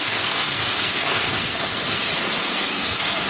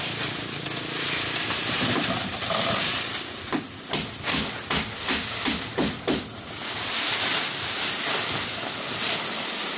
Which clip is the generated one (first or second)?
first